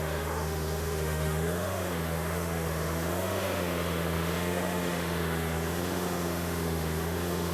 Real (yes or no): no